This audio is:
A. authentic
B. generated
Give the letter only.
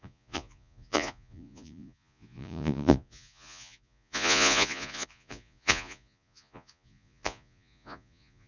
B